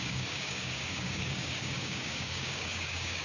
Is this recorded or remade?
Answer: remade